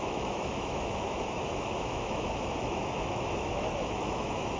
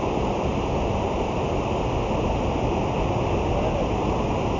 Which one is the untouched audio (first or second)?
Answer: second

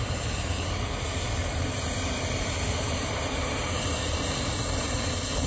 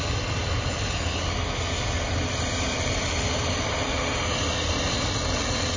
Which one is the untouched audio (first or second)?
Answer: second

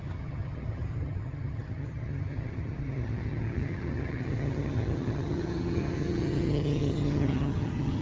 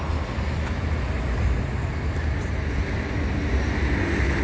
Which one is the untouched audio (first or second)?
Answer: second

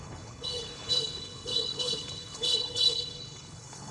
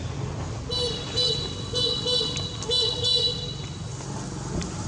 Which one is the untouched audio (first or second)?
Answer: second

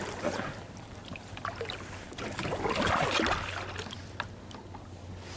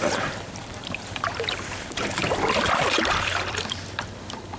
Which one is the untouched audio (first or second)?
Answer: first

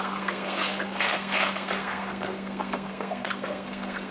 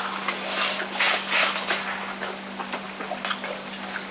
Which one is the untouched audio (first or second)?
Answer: second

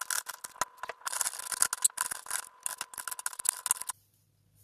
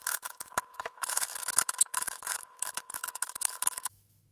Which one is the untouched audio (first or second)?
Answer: first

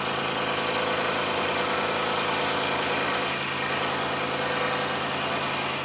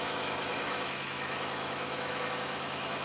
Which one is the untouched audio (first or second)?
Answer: first